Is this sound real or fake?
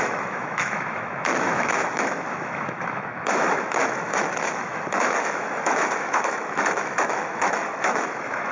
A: fake